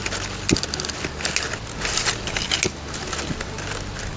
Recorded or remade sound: recorded